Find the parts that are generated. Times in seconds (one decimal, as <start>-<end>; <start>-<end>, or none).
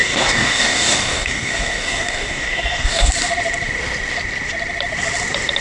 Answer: 0.0-3.1